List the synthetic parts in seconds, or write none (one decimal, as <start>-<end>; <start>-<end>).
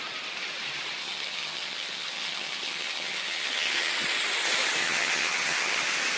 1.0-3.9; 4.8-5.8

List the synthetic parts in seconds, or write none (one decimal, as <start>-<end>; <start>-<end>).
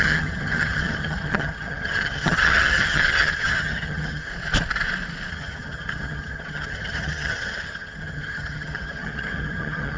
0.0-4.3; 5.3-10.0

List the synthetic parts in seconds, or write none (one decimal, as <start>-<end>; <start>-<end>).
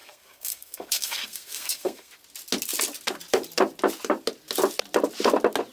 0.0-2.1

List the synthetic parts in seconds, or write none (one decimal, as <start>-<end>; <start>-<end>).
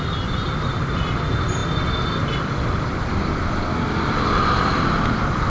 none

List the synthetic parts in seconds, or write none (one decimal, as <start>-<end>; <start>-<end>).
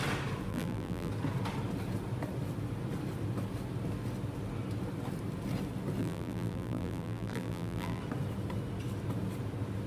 0.5-1.1; 6.0-8.0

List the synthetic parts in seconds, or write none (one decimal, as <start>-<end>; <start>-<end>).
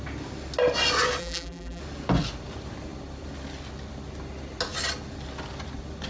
1.2-1.8